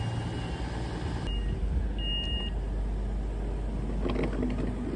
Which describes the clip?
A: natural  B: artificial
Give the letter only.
A